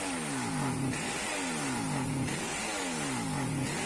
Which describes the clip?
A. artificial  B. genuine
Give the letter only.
B